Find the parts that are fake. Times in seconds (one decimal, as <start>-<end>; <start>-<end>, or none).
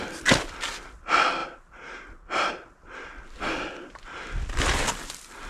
none